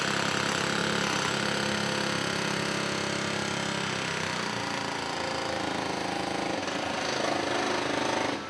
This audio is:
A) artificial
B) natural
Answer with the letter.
B